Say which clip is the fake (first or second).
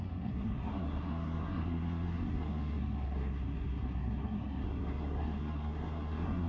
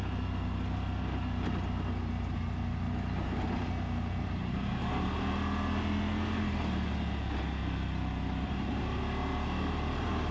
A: first